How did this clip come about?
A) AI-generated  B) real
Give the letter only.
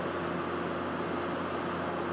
B